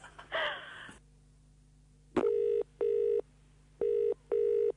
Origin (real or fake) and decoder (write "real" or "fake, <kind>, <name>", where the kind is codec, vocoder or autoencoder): real